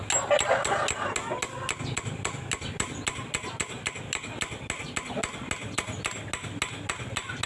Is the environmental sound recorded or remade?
recorded